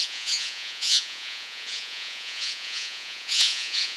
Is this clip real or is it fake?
fake